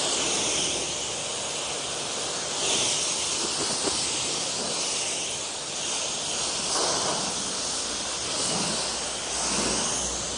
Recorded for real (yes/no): yes